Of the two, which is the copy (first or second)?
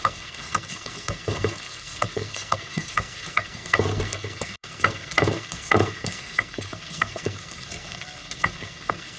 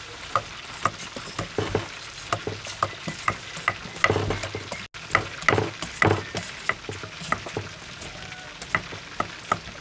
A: first